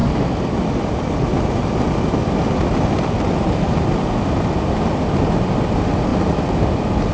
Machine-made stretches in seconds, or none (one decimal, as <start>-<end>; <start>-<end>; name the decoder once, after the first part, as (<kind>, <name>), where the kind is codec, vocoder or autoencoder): none